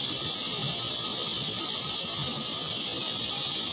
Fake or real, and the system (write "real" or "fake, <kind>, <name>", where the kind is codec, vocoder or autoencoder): real